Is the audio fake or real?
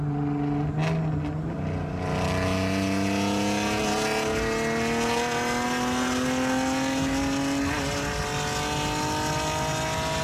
real